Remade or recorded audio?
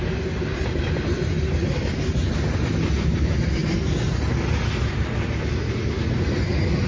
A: recorded